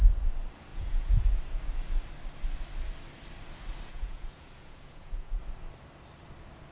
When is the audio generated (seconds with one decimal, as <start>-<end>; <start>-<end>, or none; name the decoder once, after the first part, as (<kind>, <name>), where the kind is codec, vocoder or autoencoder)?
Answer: 0.7-1.3 (vocoder, Vocos); 3.9-5.4